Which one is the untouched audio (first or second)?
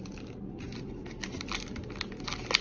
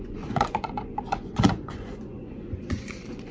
first